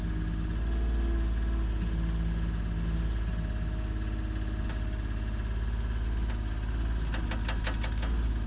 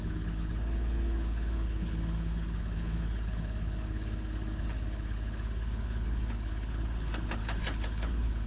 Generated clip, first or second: second